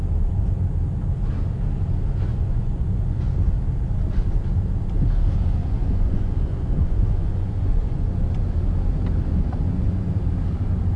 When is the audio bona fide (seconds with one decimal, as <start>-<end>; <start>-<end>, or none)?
0.0-2.3; 3.2-5.6; 8.2-9.3; 10.1-11.0

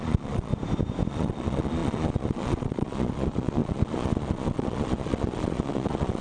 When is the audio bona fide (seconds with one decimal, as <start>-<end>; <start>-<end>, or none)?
0.5-1.1

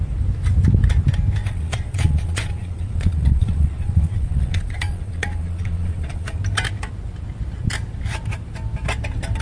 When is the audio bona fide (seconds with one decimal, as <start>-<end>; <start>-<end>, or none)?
0.0-1.4; 6.4-9.4